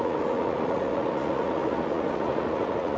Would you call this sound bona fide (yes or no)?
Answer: no